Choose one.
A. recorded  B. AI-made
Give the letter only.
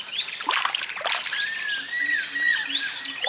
A